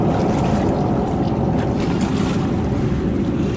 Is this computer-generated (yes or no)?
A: no